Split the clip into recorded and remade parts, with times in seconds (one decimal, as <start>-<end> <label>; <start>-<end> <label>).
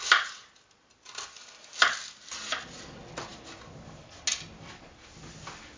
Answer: 0.0-5.8 recorded